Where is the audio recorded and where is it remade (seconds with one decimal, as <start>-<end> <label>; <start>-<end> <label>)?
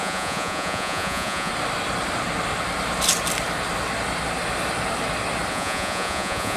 0.0-1.5 remade; 1.5-5.5 recorded; 5.5-6.6 remade